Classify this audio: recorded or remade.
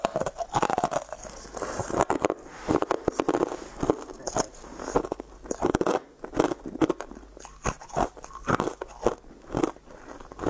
recorded